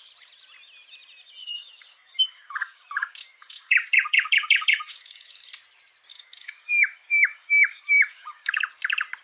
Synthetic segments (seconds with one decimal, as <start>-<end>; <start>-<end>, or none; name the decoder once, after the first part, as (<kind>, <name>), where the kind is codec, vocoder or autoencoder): 1.4-5.4 (codec, DAC); 6.1-8.6